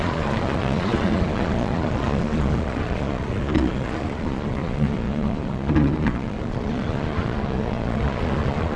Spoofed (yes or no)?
yes